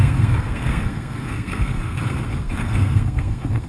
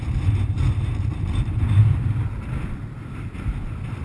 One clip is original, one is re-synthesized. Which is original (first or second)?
second